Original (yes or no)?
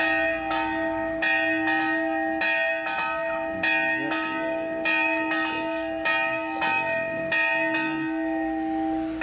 yes